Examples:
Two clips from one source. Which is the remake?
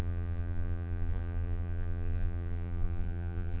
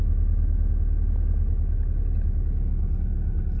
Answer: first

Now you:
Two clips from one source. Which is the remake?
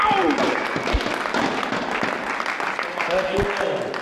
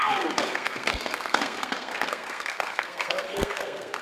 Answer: second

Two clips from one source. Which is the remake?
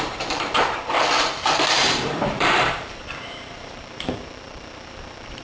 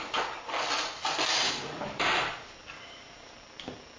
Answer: first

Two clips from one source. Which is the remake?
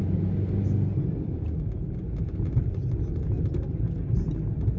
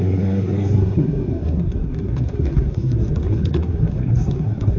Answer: second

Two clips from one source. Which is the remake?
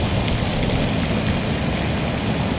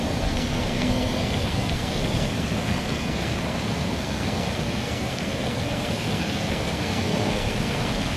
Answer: second